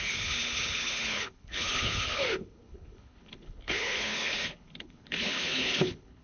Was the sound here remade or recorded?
remade